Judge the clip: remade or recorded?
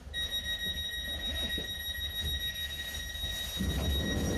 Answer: recorded